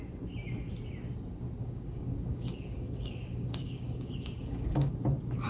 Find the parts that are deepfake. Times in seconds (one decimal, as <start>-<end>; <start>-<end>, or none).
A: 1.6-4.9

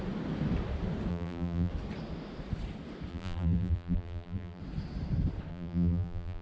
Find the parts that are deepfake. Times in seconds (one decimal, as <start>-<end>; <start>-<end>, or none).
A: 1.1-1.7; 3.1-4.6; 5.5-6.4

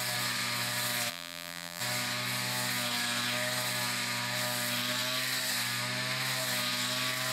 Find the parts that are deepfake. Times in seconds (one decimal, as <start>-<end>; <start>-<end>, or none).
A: 1.1-1.8

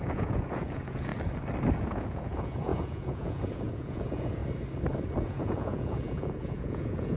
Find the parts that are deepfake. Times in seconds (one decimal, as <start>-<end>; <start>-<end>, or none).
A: 0.0-1.1; 1.8-4.4; 5.2-7.2

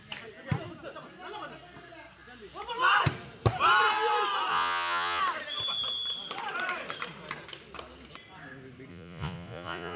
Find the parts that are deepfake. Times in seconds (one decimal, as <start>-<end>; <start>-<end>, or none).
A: 4.5-5.2; 8.9-10.0